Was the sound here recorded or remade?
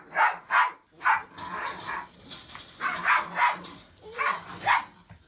recorded